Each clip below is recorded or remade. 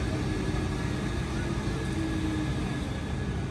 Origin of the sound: recorded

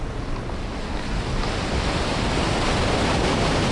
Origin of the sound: recorded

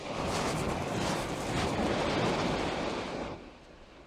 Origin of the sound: recorded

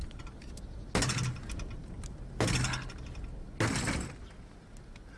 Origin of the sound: recorded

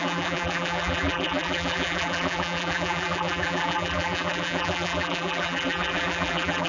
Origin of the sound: remade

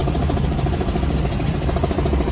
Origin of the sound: recorded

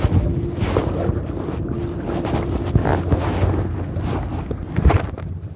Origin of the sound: recorded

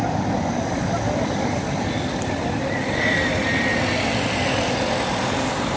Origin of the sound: recorded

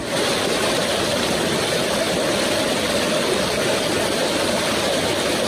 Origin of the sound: recorded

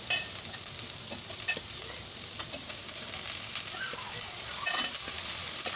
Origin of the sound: recorded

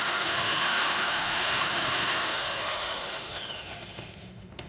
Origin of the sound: remade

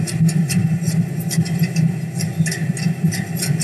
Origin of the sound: recorded